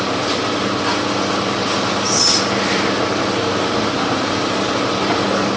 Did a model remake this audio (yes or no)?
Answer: no